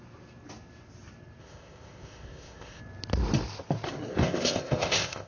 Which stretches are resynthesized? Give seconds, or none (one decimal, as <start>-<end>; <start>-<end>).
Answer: 1.4-2.8; 4.1-5.3